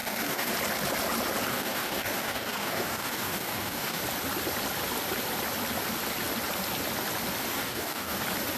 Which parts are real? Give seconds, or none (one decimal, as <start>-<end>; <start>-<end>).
0.5-1.5; 4.0-7.5; 8.2-8.6